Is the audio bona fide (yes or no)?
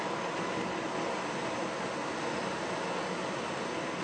yes